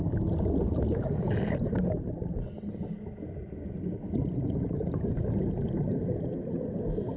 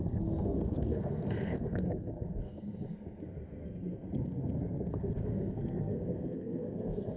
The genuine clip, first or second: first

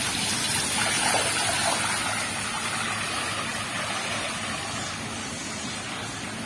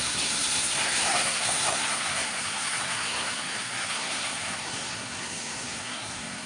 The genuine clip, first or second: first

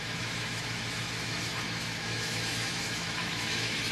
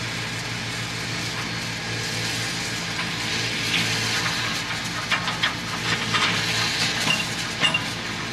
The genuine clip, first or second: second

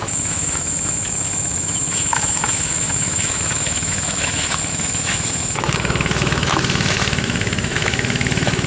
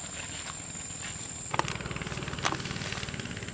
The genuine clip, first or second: second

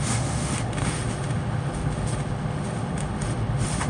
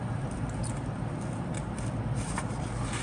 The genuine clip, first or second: second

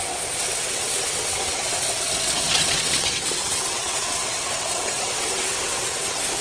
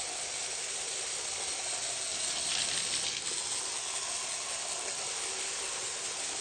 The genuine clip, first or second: second